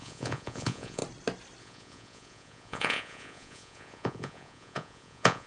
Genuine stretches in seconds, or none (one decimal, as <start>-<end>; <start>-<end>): 1.0-1.6